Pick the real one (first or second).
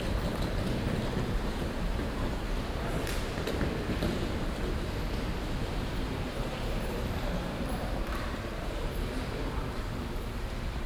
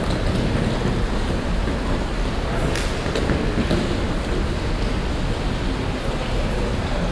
second